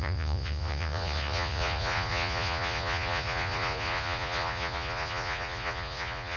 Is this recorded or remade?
remade